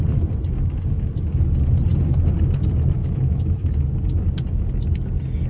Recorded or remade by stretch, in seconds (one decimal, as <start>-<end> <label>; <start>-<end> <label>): 0.0-3.0 recorded; 3.0-3.7 remade; 3.7-5.5 recorded